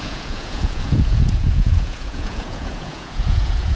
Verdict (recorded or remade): remade